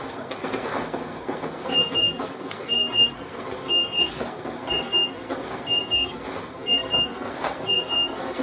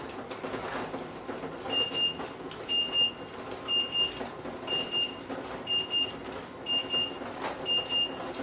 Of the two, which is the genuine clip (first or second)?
second